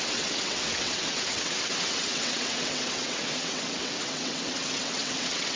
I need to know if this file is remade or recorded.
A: remade